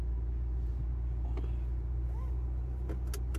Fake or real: real